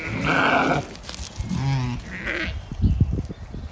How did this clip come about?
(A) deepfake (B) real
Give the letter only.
B